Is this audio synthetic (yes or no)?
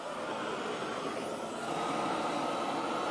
no